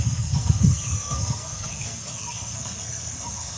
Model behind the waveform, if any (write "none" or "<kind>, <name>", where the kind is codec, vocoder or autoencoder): codec, SNAC